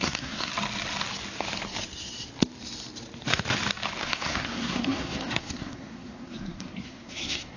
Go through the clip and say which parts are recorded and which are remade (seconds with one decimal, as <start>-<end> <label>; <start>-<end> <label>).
0.0-0.5 remade; 0.5-4.0 recorded; 4.0-7.6 remade